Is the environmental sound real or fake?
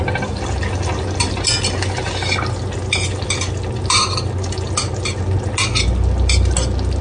real